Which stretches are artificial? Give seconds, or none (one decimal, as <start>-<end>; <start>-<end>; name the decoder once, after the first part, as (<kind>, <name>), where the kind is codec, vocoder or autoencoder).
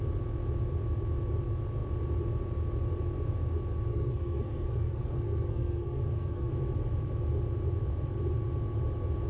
3.9-6.5 (codec, SNAC)